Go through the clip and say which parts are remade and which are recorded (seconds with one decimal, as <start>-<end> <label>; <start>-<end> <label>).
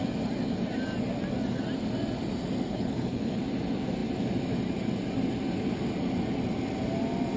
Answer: 0.0-2.7 recorded; 2.7-3.4 remade; 3.4-7.4 recorded